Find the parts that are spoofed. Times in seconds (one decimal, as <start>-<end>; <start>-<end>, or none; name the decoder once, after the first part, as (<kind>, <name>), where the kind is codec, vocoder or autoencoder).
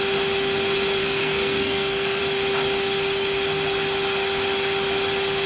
1.0-2.2 (codec, SNAC)